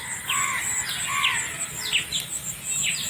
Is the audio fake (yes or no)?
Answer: no